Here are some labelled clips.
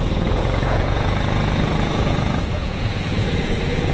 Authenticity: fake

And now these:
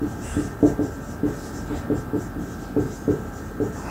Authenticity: real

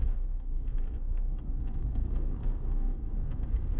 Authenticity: fake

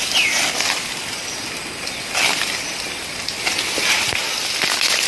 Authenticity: real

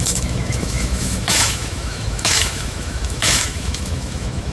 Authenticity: fake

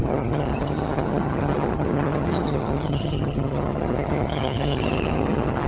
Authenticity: fake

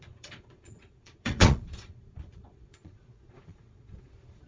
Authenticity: fake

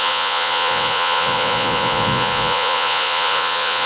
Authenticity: fake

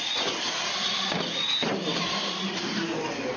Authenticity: real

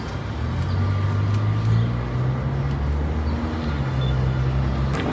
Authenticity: real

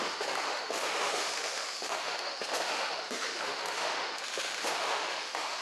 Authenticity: fake